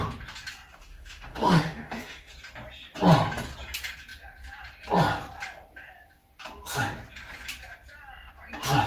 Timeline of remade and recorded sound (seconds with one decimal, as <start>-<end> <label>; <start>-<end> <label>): 0.0-0.8 recorded; 0.8-2.3 remade; 2.3-8.9 recorded